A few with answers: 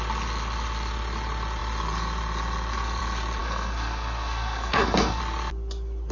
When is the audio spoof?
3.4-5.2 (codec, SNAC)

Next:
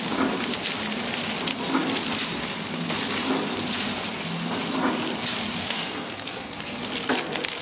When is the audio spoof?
5.6-6.9 (codec, SNAC)

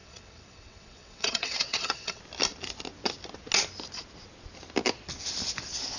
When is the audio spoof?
0.0-2.2 (vocoder, WaveNeXt)

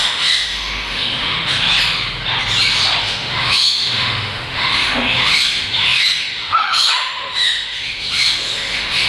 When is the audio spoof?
0.0-1.7 (autoencoder, DAC-VAE); 3.0-9.1

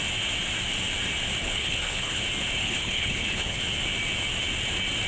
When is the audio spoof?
1.4-2.2 (codec, HILCodec); 2.6-3.6